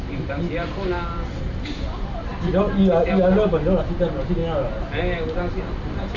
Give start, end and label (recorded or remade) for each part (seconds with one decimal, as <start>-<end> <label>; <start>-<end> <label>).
0.0-6.2 recorded